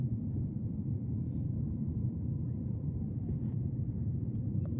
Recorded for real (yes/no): no